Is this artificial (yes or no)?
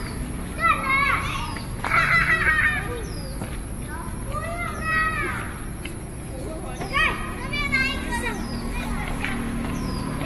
no